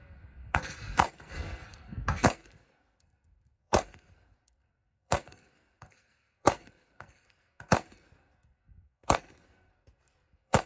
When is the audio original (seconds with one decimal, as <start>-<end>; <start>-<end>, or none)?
none